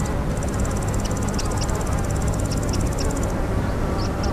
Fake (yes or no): no